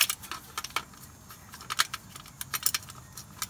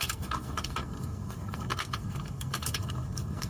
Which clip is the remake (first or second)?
second